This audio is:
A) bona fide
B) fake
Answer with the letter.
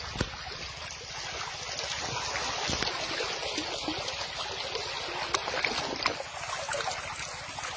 A